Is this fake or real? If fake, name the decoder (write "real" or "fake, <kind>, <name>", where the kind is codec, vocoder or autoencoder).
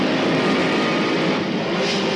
real